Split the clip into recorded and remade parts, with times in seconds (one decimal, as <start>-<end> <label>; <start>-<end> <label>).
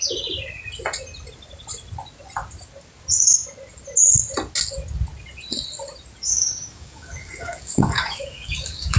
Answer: 0.0-6.3 recorded; 6.3-9.0 remade